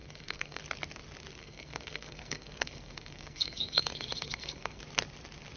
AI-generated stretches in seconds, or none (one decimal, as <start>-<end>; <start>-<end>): 0.0-0.6; 1.4-4.8